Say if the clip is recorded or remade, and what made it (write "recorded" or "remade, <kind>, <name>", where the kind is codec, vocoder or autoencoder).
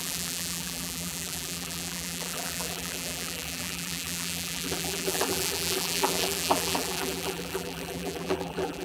remade, vocoder, BigVGAN v2